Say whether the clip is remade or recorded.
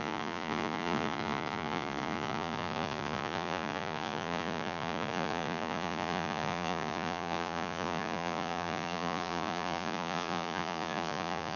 remade